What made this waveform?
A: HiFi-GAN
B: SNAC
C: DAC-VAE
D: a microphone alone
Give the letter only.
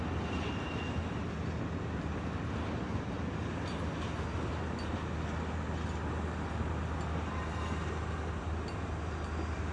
D